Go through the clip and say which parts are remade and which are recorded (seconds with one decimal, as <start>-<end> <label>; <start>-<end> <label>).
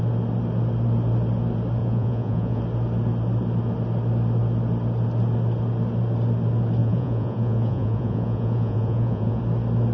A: 0.0-1.8 recorded; 1.8-2.6 remade; 2.6-6.8 recorded; 6.8-9.4 remade; 9.4-9.9 recorded